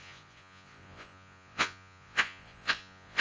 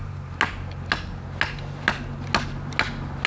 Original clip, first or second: second